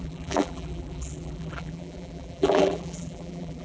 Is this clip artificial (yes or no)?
yes